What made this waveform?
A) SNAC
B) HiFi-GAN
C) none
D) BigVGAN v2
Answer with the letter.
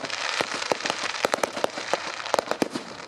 D